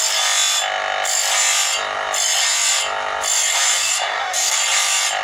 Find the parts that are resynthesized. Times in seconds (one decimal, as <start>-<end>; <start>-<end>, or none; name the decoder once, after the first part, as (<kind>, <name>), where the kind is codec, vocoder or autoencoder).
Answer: 3.7-4.5 (codec, DAC)